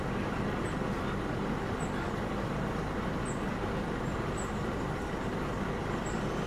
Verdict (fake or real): real